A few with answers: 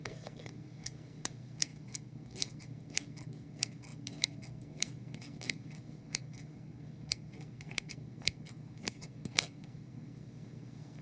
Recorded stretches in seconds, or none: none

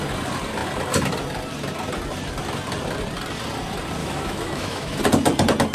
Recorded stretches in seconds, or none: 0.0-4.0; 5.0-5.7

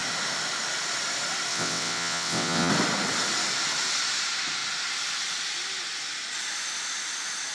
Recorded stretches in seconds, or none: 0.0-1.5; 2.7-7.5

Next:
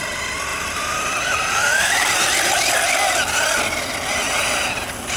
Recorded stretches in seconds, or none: 0.0-0.5; 2.5-5.2

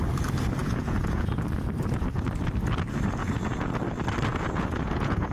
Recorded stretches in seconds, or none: 0.0-0.6; 1.3-3.2; 3.8-4.3

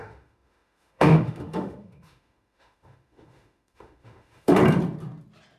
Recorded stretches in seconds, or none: 4.6-5.6